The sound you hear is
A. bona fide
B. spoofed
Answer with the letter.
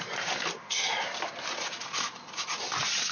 A